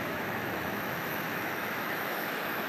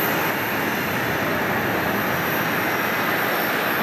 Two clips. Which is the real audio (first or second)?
second